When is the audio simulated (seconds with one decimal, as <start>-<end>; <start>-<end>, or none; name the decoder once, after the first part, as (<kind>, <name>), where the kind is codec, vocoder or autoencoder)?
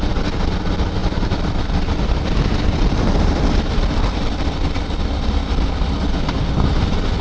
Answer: 1.0-4.2 (vocoder, BigVGAN v2)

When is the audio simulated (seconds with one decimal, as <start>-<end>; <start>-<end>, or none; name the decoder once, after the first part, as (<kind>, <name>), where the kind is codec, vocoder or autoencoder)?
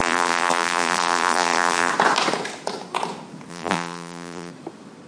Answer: 0.0-1.9 (vocoder, BigVGAN v2); 3.5-4.5